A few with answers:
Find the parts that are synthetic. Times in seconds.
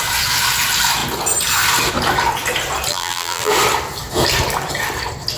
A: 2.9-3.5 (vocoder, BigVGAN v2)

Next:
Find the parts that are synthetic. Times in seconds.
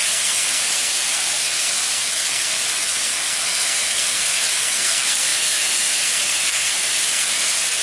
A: 0.0-7.8 (codec, SNAC)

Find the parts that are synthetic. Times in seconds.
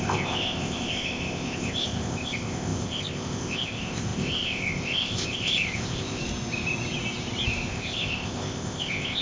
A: 0.0-6.2 (codec, ZipCodec); 7.7-9.2